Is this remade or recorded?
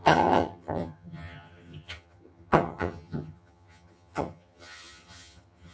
remade